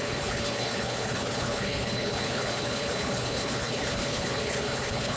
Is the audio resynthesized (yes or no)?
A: yes